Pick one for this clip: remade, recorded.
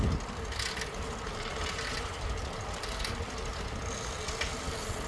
recorded